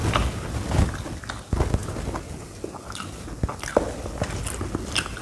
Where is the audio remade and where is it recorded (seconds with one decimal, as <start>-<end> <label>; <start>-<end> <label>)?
0.0-5.2 recorded

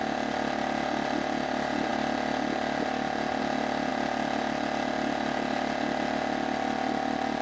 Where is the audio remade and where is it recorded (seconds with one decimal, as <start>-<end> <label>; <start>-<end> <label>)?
0.0-7.4 recorded

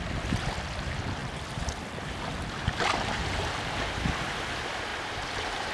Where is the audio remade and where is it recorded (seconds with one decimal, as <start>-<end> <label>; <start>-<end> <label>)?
0.0-4.9 recorded; 4.9-5.7 remade